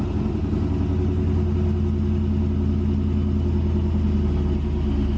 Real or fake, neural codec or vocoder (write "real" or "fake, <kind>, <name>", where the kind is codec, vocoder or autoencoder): real